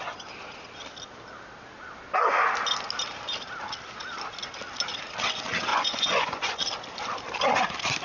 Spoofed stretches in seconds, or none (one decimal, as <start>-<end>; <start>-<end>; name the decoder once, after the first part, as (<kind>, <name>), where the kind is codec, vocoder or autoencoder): 5.7-6.6 (vocoder, Vocos)